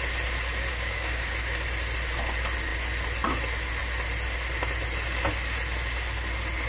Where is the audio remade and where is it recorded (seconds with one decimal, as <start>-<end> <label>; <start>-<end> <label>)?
0.0-0.7 recorded; 0.7-1.3 remade; 1.3-6.7 recorded